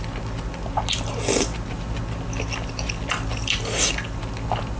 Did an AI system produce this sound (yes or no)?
no